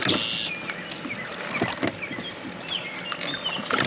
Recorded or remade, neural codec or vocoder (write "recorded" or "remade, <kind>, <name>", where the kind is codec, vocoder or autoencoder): recorded